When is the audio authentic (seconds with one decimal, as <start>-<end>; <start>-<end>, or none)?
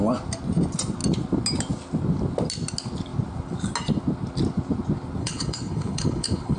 0.0-5.2